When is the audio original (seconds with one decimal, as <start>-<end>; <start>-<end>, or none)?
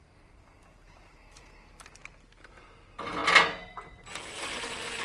0.0-5.0